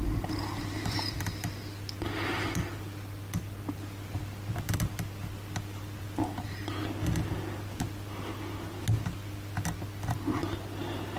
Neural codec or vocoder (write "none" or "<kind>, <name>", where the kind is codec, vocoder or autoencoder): none